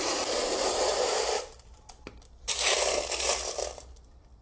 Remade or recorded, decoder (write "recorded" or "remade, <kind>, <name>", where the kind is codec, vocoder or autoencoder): recorded